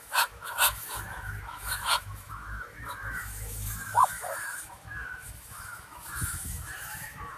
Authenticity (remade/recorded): remade